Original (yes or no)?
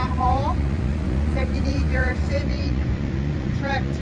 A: no